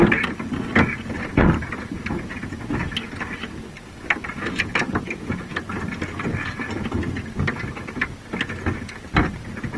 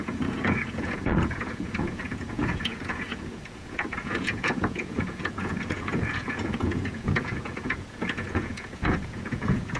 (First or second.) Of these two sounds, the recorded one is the first